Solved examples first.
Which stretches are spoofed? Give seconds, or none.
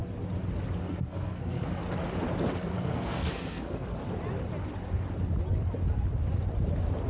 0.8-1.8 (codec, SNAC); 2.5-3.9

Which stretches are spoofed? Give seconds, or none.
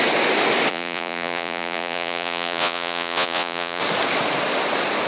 0.7-3.8 (vocoder, Vocos)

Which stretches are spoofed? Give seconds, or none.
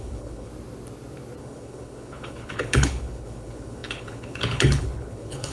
0.0-0.5 (codec, HILCodec); 1.4-5.5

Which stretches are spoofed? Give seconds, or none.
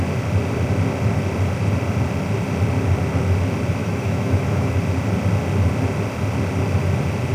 3.8-4.8 (autoencoder, DAC-VAE)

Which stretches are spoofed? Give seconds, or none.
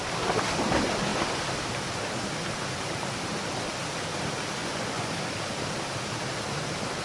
4.6-5.1 (vocoder, Vocos)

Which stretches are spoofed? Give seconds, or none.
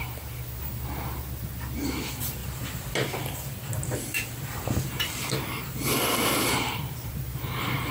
2.4-7.1 (vocoder, BigVGAN v2)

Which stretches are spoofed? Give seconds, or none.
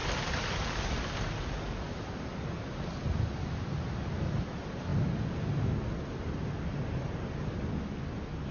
none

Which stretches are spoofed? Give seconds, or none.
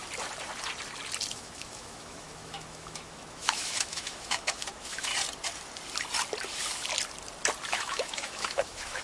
1.3-5.1 (autoencoder, DAC-VAE); 7.7-9.0